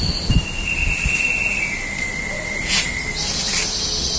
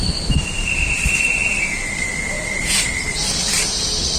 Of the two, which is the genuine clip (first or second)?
first